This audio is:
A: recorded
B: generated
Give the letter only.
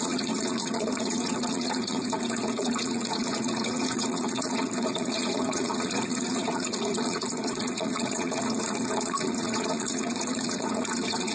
B